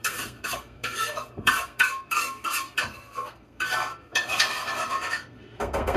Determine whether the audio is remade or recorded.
remade